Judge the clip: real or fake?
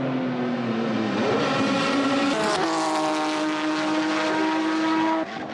real